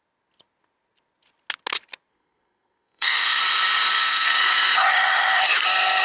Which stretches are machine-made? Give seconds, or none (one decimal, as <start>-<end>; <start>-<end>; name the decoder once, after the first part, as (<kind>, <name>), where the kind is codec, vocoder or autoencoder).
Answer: 2.1-3.4 (codec, SNAC); 3.9-4.5